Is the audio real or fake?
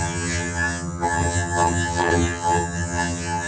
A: fake